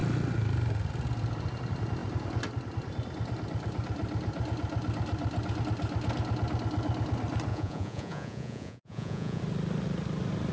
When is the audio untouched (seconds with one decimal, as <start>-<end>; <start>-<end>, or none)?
0.0-7.5; 9.4-10.5